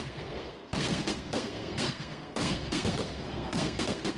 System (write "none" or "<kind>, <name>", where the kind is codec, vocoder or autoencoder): codec, SNAC